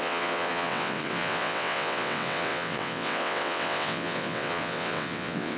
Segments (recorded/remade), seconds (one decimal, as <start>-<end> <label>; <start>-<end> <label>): 0.0-5.6 remade

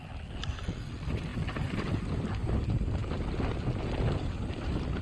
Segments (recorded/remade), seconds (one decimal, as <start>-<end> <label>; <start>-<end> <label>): 0.0-5.0 recorded

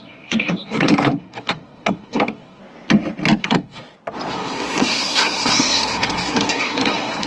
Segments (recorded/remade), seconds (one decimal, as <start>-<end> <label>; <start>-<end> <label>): 0.0-2.6 remade; 2.6-3.4 recorded; 3.4-3.8 remade; 3.8-4.3 recorded; 4.3-7.3 remade